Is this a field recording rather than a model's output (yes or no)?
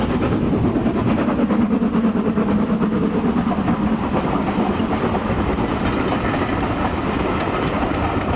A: yes